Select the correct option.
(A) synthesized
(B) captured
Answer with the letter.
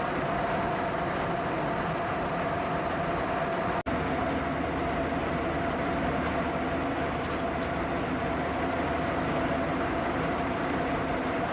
B